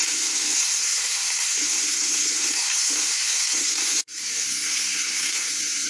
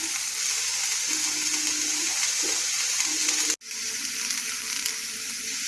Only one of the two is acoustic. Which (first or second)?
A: second